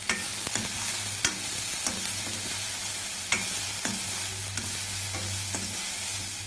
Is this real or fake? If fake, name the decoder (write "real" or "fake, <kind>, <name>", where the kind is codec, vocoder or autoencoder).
real